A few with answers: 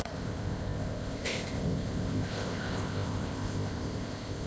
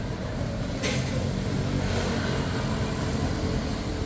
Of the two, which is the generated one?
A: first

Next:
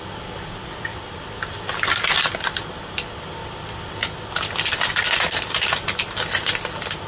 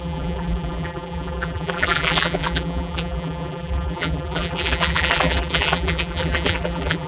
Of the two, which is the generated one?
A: second